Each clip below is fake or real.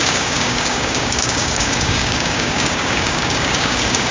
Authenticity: fake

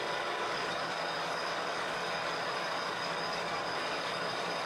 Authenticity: fake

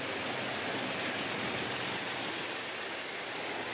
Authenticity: real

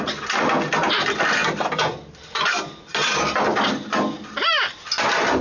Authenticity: real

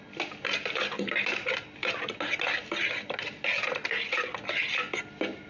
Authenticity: real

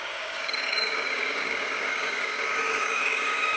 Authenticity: fake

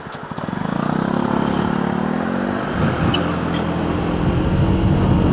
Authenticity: real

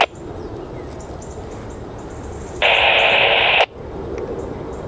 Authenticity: real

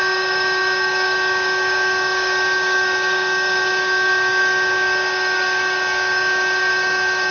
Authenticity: fake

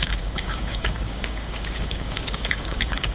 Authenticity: fake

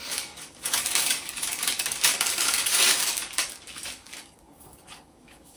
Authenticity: fake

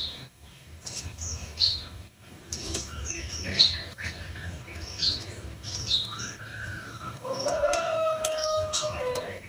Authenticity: fake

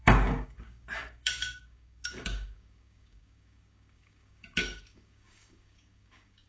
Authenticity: fake